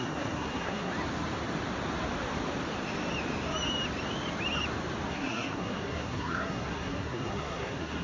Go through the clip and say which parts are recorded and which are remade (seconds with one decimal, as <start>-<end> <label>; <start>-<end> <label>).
0.0-0.9 remade; 0.9-5.1 recorded; 5.1-8.0 remade